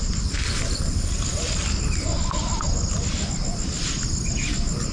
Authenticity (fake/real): real